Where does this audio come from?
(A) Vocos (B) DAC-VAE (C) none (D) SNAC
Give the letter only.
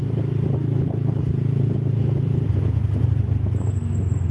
C